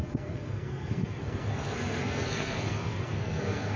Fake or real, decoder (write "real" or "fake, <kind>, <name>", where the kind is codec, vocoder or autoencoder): fake, codec, SNAC